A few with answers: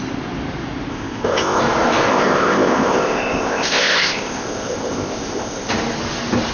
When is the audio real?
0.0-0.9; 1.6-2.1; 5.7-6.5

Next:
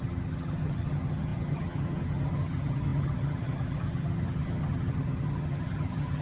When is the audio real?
none

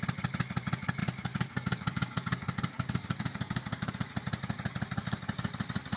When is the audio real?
0.0-1.0; 3.9-6.0

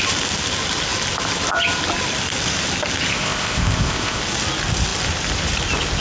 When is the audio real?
0.0-3.1; 4.2-6.0